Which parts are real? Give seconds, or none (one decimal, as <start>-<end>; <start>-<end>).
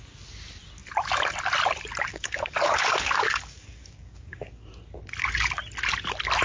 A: 0.0-2.1; 4.7-6.4